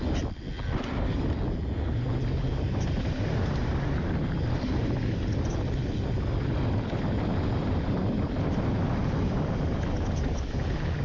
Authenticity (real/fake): real